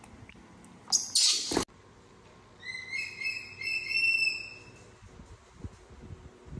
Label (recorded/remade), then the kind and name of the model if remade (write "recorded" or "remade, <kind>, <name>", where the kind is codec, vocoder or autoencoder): recorded